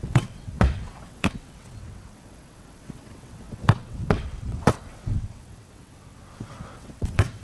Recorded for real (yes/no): no